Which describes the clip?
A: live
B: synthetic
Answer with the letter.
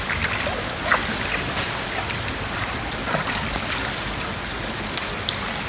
A